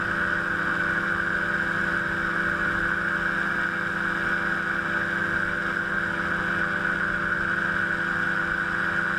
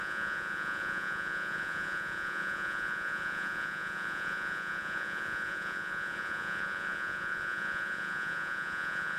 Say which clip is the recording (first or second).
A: first